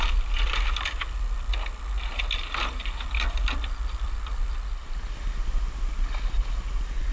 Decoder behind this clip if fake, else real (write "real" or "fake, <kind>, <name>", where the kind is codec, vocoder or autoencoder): real